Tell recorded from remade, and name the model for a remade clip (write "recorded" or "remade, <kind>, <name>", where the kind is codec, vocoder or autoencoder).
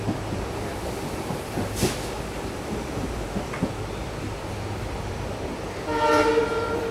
recorded